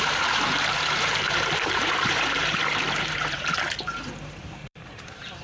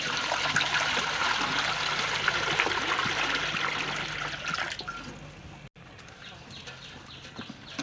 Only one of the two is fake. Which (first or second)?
first